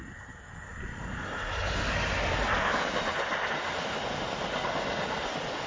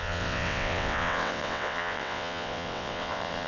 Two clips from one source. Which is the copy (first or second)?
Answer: second